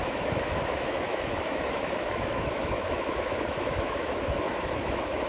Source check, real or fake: fake